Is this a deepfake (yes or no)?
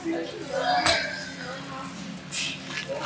no